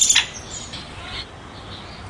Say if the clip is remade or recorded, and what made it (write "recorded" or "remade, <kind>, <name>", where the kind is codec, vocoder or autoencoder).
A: recorded